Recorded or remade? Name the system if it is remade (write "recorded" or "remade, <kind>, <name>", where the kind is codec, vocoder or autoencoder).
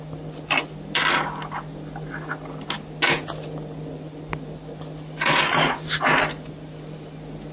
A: recorded